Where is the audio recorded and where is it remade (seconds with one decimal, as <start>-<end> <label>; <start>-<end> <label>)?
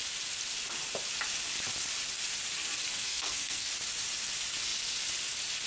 0.0-2.9 recorded; 2.9-3.7 remade; 3.7-5.7 recorded